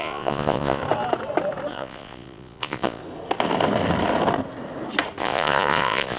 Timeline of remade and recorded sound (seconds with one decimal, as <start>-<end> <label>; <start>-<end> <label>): 0.0-0.8 remade; 0.8-1.7 recorded; 1.7-3.0 remade; 3.0-5.2 recorded; 5.2-6.2 remade